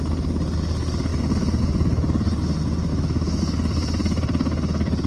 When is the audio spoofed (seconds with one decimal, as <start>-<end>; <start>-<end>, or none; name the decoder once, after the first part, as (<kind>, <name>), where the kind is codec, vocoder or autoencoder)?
2.9-3.4 (autoencoder, DAC-VAE)